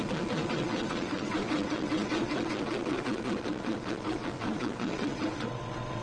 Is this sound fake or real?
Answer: fake